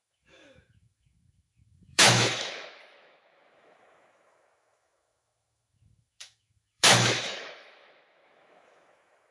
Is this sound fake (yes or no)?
yes